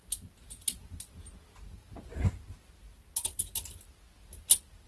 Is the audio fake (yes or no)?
no